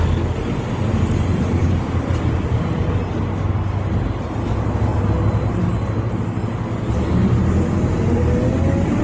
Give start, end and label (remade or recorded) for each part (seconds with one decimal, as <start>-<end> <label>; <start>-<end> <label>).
0.0-9.0 recorded